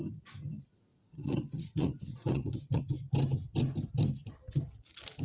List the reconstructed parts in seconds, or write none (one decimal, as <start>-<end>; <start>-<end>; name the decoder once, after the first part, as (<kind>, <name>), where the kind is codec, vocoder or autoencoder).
0.9-2.8 (vocoder, Vocos)